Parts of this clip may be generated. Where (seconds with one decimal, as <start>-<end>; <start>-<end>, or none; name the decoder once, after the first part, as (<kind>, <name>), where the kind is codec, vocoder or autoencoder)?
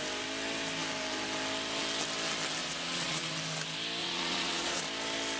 2.6-3.3 (vocoder, Vocos); 4.0-4.8